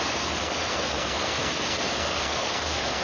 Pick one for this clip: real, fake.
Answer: fake